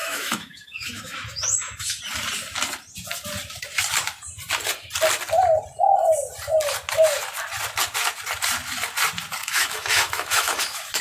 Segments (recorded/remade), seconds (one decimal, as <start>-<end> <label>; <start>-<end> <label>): 0.0-2.0 remade; 2.0-9.4 recorded; 9.4-11.0 remade